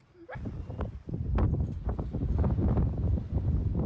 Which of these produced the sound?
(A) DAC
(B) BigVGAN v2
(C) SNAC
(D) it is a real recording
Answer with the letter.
D